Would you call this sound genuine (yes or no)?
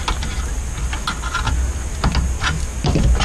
yes